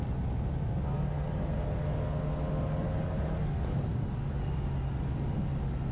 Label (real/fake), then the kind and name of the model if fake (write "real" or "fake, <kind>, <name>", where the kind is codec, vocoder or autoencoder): real